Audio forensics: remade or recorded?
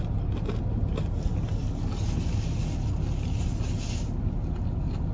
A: recorded